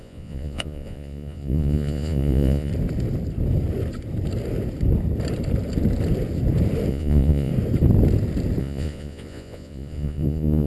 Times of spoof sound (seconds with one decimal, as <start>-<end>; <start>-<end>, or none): 0.0-2.7; 6.9-7.5; 8.6-10.7